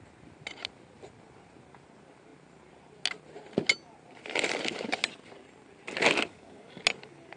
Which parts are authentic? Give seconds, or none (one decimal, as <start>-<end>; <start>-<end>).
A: 0.0-6.3; 6.8-7.4